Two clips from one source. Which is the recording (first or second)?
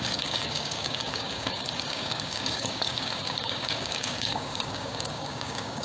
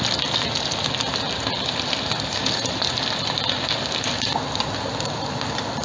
second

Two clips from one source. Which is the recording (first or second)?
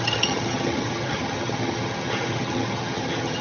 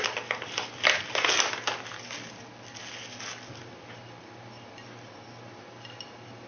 second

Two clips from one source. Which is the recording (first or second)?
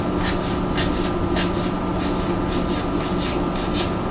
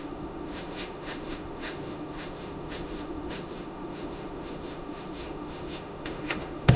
first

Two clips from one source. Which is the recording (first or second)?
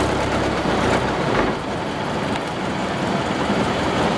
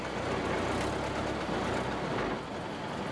second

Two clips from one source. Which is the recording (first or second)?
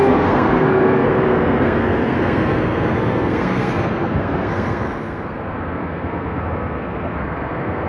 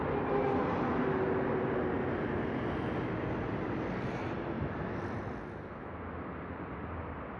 second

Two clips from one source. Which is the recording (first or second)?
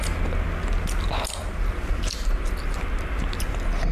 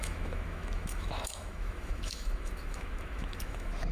first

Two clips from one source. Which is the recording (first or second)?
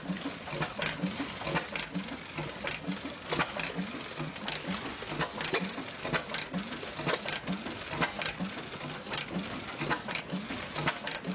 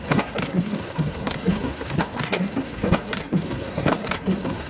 first